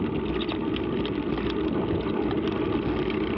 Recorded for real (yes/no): yes